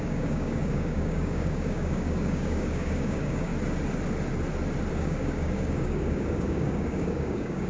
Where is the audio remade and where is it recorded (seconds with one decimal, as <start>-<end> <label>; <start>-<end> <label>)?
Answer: 0.0-3.5 remade; 3.5-4.9 recorded; 4.9-7.7 remade

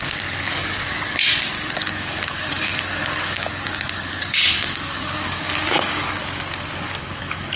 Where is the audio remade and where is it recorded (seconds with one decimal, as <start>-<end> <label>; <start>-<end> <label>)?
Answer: 0.0-7.6 remade

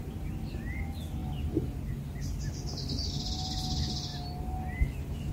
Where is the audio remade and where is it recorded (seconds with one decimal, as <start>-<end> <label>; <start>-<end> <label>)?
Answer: 0.0-5.3 recorded